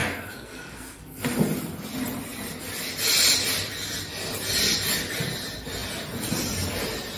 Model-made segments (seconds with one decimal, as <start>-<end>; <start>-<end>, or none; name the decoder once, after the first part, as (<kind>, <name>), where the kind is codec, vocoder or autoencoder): 0.0-1.2 (codec, SNAC)